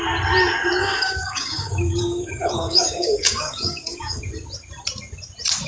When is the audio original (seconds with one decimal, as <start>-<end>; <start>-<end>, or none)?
0.0-0.8; 4.2-5.7